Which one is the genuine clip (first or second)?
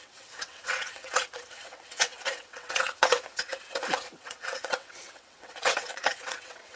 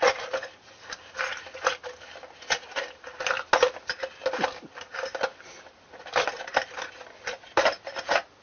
second